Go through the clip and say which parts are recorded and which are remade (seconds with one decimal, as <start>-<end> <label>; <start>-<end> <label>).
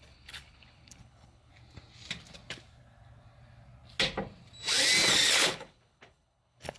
0.0-1.5 remade; 1.5-5.3 recorded; 5.3-6.8 remade